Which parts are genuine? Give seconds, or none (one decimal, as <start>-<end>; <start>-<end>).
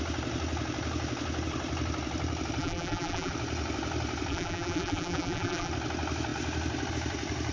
0.0-2.6; 3.3-4.3; 5.7-7.5